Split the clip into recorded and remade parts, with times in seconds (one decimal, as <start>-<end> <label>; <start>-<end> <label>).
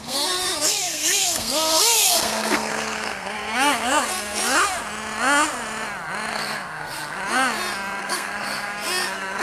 0.0-4.4 remade; 4.4-6.3 recorded; 6.3-7.2 remade; 7.2-8.0 recorded; 8.0-9.4 remade